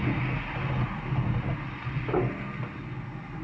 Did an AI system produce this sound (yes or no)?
no